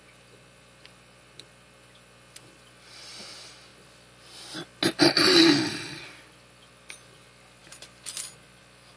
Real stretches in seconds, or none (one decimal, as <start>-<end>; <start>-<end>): 0.0-7.6; 8.6-9.0